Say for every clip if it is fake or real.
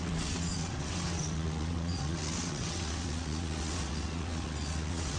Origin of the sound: fake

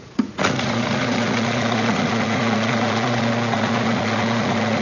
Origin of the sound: fake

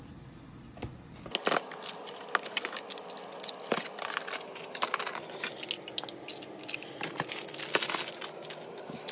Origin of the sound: real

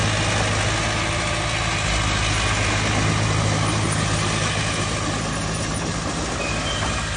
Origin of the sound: real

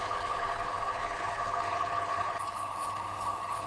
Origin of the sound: fake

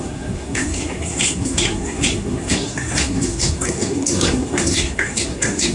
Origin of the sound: fake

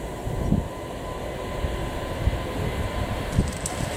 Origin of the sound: real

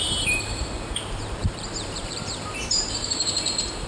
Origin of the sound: fake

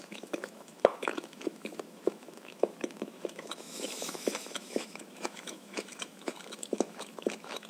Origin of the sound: fake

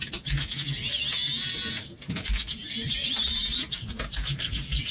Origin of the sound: real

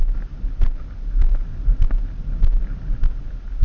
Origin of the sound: real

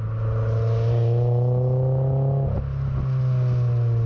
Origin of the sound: real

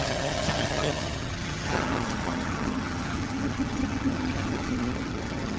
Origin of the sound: fake